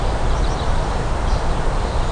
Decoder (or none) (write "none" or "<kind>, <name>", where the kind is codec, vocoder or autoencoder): none